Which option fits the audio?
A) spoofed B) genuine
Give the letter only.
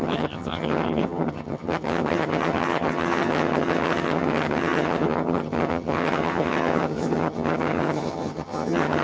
A